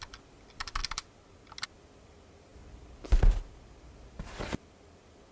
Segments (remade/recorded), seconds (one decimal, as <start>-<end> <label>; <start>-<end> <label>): 0.0-5.3 recorded